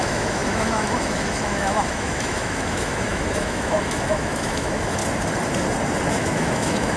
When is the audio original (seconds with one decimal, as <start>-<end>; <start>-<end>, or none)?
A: 5.0-6.1